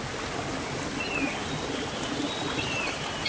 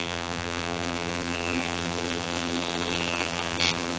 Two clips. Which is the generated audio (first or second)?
second